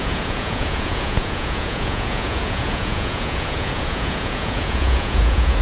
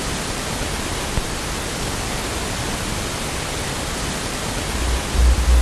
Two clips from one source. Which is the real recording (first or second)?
second